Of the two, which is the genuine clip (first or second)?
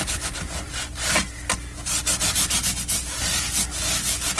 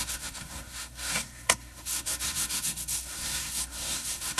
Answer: first